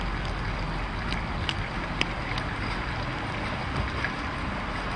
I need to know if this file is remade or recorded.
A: recorded